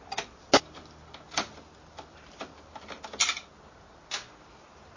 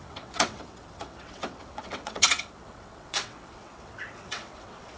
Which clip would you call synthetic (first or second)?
second